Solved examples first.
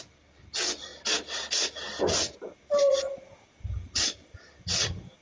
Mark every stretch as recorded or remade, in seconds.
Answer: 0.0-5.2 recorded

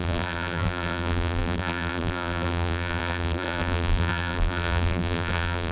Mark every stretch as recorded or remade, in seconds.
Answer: 0.0-5.7 remade

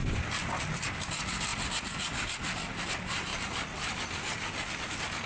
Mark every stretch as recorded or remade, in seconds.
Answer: 0.0-1.5 remade; 1.5-2.9 recorded; 2.9-3.3 remade; 3.3-5.3 recorded

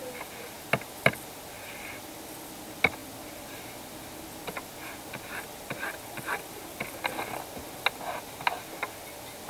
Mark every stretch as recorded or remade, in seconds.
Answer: 0.0-9.5 recorded

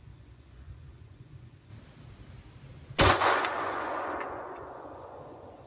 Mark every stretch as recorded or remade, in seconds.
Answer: 0.0-1.7 remade; 1.7-3.0 recorded; 3.0-5.7 remade

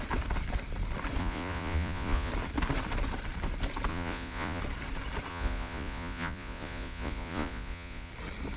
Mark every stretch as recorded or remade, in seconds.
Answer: 0.0-1.2 recorded; 1.2-2.3 remade; 2.3-3.9 recorded; 3.9-4.6 remade; 4.6-5.3 recorded; 5.3-8.1 remade; 8.1-8.6 recorded

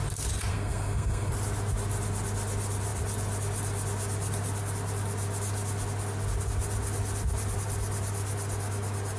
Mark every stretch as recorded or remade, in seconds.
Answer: 0.0-0.5 recorded; 0.5-1.3 remade; 1.3-9.2 recorded

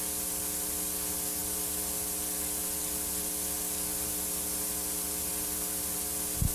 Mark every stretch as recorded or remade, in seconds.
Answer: 0.0-6.5 recorded